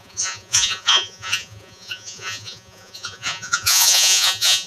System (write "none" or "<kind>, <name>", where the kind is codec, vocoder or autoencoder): vocoder, Vocos